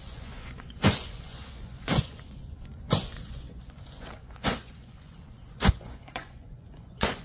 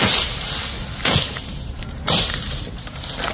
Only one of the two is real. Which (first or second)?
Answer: second